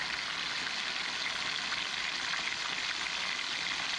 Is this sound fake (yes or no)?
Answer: no